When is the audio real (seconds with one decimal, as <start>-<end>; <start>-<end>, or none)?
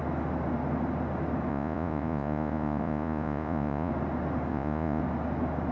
0.0-1.5; 3.9-4.5; 5.0-5.7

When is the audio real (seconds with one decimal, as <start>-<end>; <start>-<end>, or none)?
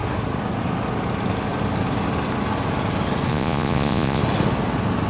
0.0-3.3; 4.2-5.1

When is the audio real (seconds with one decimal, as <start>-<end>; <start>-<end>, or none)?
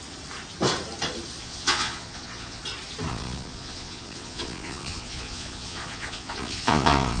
0.0-1.4; 2.6-3.1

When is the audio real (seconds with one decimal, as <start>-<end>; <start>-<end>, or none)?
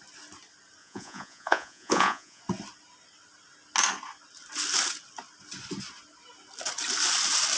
0.0-0.8; 2.4-7.6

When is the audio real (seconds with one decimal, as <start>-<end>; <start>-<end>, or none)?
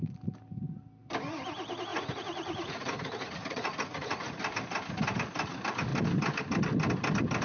0.0-1.9; 4.4-7.4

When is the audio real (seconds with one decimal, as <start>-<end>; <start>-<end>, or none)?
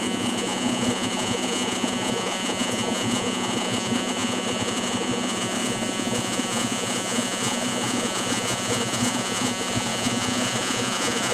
none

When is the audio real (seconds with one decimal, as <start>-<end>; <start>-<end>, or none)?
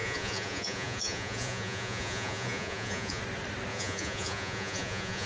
3.2-3.7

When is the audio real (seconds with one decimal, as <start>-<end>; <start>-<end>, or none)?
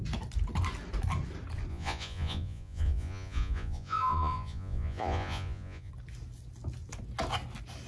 0.0-1.7; 5.9-7.9